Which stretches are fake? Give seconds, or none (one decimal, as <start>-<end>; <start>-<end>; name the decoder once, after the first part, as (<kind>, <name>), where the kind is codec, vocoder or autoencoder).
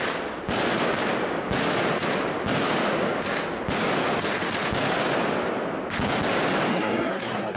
6.7-7.6 (codec, SNAC)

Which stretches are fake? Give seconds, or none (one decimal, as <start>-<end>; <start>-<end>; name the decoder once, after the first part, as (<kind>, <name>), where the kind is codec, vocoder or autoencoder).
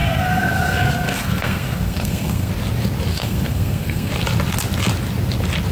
0.0-2.5 (codec, SNAC); 3.1-4.1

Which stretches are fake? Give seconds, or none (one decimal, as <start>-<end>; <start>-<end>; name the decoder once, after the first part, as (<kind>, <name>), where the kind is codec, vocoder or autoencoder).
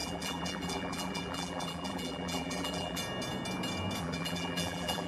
0.0-3.0 (vocoder, BigVGAN v2); 4.0-5.1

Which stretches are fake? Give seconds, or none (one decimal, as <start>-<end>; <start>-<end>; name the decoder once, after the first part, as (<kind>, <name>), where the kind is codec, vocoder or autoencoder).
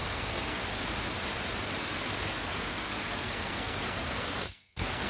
0.0-0.6 (codec, SNAC); 1.8-5.1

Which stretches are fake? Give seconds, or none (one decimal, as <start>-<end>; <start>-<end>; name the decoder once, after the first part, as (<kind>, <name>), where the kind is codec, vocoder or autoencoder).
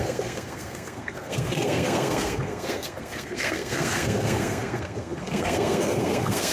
0.0-6.5 (codec, SNAC)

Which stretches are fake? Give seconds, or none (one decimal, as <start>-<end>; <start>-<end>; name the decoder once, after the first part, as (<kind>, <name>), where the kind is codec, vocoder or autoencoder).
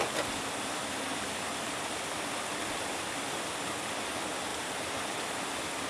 1.1-1.7 (vocoder, BigVGAN v2); 4.5-5.3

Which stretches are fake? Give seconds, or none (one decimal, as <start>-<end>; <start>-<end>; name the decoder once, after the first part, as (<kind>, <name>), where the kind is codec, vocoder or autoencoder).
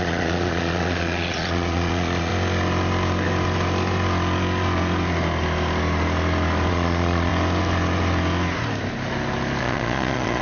0.0-2.3 (vocoder, Vocos); 6.7-7.3; 9.6-10.4